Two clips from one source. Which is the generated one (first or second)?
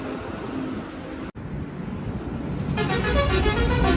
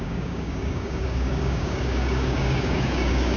second